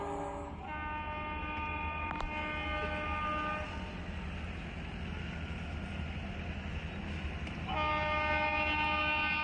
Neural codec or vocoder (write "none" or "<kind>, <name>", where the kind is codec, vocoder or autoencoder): none